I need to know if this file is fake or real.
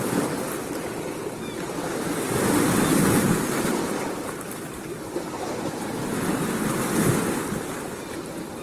real